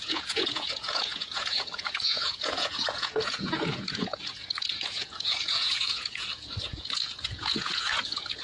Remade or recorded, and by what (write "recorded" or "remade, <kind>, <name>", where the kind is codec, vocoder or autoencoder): remade, vocoder, Vocos